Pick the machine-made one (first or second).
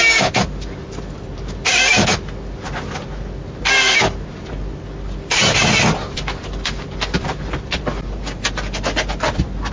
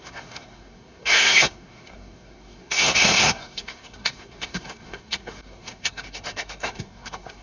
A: second